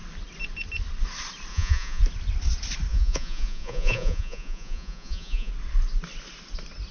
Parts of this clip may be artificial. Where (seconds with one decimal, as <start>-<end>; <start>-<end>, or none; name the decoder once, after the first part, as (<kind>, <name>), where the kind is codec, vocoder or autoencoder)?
1.5-2.0 (vocoder, Vocos); 2.9-5.5